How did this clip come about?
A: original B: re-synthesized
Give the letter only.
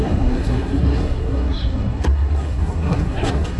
B